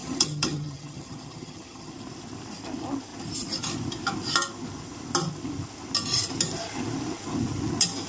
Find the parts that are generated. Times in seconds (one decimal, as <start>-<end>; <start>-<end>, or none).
0.0-1.9

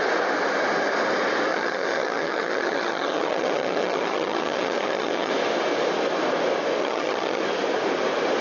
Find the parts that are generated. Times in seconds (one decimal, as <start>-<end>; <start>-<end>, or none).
1.5-5.3; 6.8-7.4

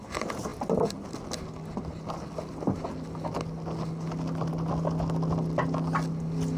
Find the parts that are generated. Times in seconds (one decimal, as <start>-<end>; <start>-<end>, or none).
none

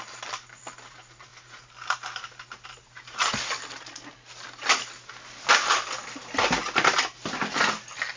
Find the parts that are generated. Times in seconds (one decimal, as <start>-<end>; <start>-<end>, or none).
none

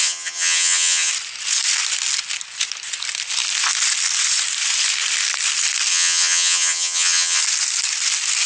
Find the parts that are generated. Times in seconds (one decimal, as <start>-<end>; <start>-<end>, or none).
0.0-1.1; 5.9-7.4

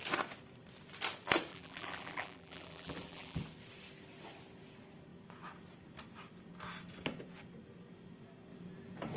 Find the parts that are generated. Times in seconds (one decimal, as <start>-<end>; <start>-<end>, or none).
1.5-3.4

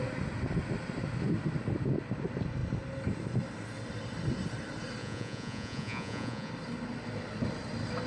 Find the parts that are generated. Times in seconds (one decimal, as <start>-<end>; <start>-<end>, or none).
5.0-6.5